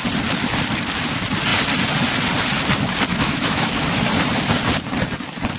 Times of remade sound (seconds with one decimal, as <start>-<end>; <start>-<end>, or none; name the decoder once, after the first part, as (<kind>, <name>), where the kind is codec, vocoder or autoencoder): 3.1-4.0 (autoencoder, DAC-VAE)